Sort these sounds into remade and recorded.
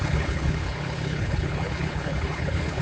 remade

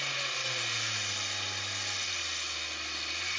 recorded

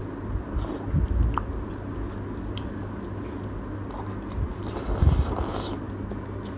recorded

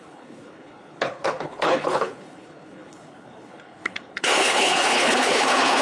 remade